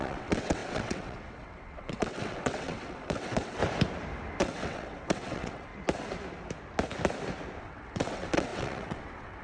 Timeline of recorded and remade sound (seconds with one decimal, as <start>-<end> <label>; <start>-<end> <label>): 0.0-3.6 remade; 3.6-4.4 recorded; 4.4-5.7 remade; 5.7-7.6 recorded; 7.6-9.4 remade